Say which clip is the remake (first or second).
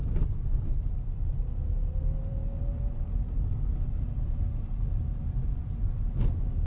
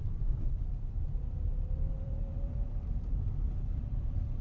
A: second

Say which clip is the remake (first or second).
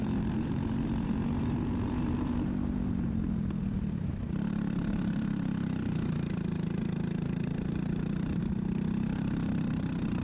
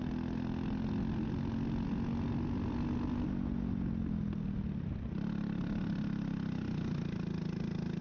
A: first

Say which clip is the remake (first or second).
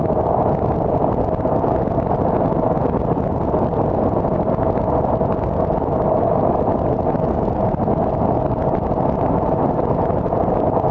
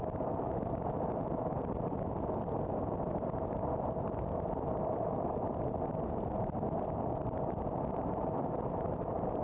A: second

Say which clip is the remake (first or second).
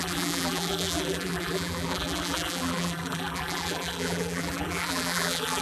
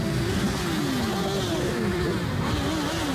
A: first